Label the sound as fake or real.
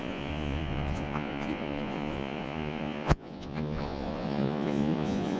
fake